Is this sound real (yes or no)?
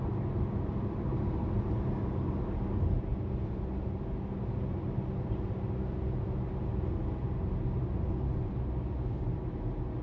yes